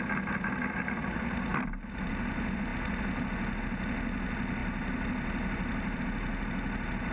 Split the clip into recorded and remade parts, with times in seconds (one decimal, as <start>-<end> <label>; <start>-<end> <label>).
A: 0.0-1.5 recorded; 1.5-2.1 remade; 2.1-4.6 recorded; 4.6-6.0 remade; 6.0-7.1 recorded